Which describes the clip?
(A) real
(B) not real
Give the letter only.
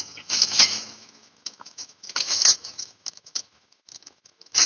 B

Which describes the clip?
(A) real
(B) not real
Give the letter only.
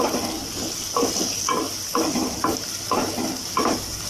A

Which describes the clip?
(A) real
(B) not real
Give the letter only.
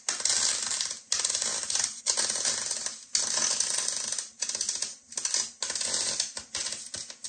A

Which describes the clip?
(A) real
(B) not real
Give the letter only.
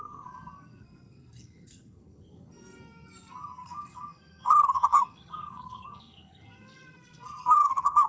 B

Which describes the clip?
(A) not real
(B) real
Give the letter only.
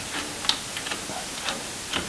B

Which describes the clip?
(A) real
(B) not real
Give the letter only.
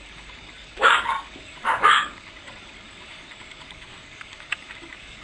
B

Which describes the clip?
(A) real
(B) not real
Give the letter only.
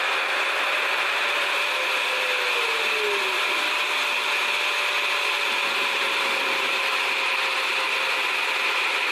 A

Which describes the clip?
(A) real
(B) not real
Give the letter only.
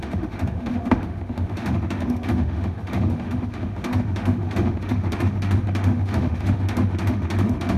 B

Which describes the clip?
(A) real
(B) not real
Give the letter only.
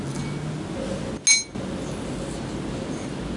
A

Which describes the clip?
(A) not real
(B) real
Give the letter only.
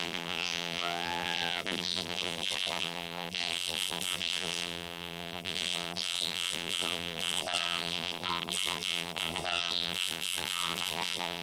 A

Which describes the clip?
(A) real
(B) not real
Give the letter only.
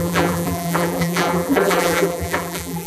B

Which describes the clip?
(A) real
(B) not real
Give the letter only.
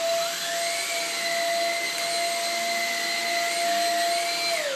A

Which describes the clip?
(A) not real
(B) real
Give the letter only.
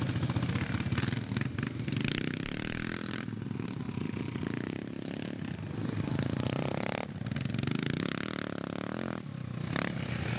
B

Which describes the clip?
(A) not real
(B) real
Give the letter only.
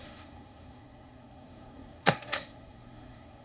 A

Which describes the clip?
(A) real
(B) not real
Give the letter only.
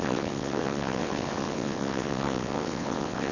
B